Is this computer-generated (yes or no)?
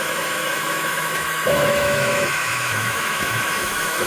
yes